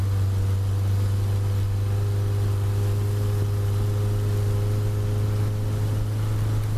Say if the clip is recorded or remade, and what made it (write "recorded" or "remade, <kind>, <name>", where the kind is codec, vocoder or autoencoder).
recorded